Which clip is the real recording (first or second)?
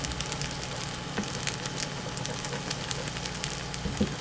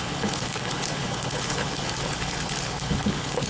first